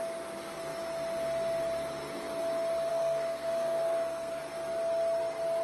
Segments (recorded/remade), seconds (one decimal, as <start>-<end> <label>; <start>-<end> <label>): 0.0-2.9 recorded; 2.9-4.4 remade; 4.4-5.6 recorded